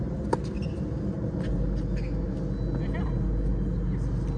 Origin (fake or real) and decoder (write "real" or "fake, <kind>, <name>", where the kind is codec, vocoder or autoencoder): real